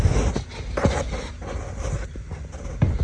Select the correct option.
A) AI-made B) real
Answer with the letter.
B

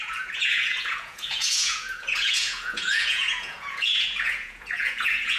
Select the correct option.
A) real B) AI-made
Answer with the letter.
B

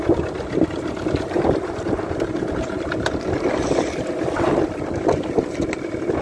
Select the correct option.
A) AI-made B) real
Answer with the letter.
A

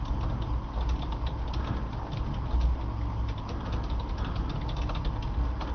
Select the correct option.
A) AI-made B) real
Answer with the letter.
B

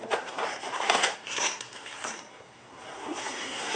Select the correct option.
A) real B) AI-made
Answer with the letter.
B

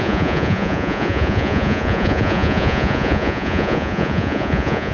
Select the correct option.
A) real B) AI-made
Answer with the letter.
B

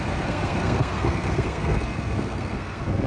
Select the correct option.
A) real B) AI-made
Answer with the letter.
B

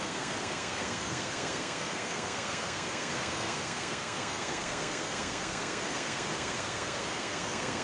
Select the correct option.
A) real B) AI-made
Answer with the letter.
B